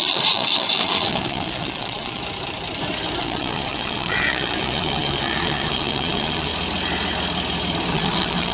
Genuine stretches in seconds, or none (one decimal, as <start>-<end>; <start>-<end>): 2.2-3.2; 6.5-7.9

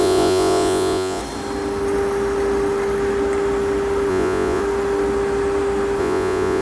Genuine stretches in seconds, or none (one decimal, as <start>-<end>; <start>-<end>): 1.2-4.1; 4.6-6.0

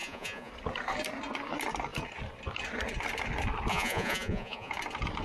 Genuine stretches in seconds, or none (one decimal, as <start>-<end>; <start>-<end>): 0.5-3.7; 4.7-5.2

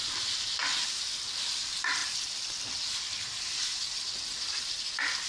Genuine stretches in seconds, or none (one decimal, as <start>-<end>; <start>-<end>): 0.0-5.3

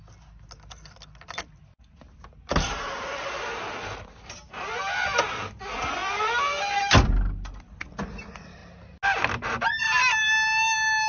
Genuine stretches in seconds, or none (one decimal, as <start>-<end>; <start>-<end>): 0.0-11.1

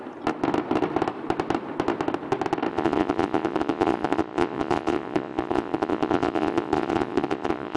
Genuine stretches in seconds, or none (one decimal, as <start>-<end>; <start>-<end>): 0.0-2.7